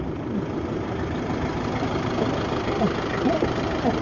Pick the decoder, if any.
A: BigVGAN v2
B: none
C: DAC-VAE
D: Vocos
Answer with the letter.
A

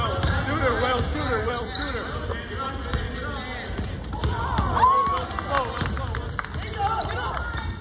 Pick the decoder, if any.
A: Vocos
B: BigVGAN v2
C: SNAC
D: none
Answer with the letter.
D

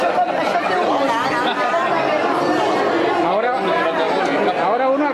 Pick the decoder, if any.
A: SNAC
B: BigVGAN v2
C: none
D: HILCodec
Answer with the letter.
C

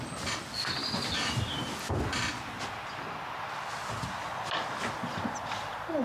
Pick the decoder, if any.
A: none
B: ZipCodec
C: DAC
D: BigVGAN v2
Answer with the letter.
A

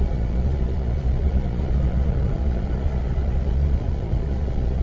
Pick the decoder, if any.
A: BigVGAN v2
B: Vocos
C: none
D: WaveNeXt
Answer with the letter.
B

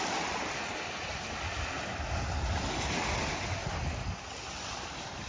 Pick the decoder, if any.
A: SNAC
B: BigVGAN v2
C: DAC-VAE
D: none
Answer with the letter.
D